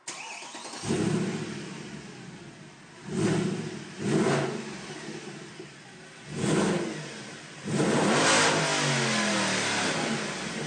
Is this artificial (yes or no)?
no